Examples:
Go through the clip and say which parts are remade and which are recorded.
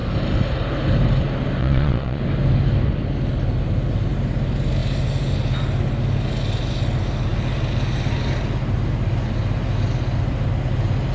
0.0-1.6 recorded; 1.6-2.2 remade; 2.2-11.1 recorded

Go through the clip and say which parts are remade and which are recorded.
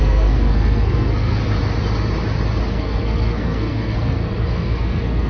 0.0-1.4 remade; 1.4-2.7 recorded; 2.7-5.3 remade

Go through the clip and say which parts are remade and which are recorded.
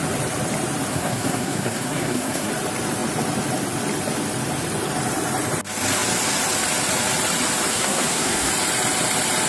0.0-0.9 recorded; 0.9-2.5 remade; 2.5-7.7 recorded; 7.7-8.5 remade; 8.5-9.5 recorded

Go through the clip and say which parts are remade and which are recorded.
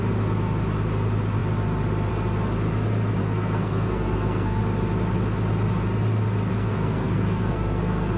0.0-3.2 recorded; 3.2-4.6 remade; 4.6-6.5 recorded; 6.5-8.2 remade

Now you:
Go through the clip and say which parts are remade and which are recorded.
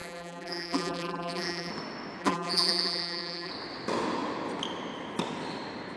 0.0-1.7 remade; 1.7-2.2 recorded; 2.2-3.5 remade; 3.5-6.0 recorded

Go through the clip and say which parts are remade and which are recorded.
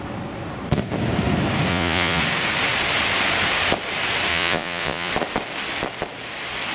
0.0-1.7 recorded; 1.7-2.2 remade; 2.2-4.3 recorded; 4.3-5.1 remade; 5.1-6.7 recorded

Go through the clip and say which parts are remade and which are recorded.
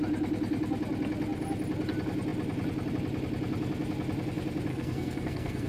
0.0-4.7 recorded; 4.7-5.7 remade